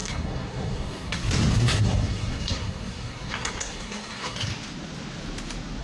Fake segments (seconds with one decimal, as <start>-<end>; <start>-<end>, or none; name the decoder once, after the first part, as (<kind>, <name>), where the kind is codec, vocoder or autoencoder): 0.0-4.5 (codec, SNAC)